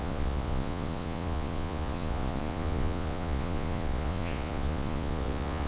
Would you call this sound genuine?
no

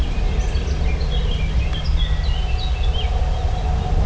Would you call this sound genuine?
yes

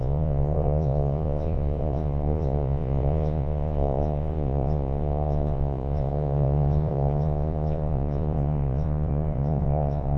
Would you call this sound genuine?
no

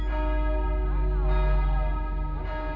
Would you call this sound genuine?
yes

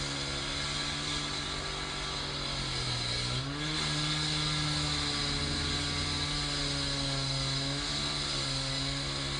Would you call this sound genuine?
yes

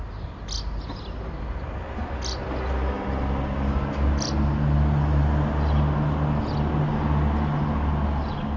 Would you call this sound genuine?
yes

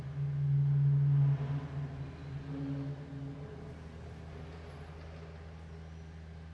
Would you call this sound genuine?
yes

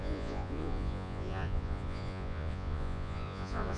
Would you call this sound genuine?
no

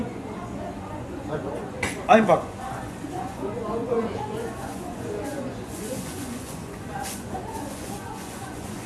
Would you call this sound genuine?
no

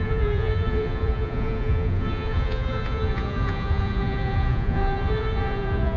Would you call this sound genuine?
no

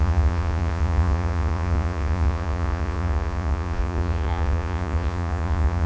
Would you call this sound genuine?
no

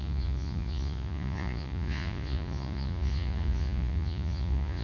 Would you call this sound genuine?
no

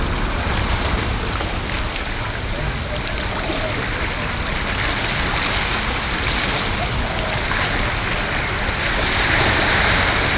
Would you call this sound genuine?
yes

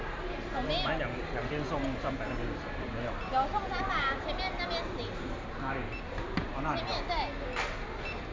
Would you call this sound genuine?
yes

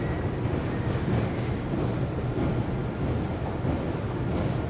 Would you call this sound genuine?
yes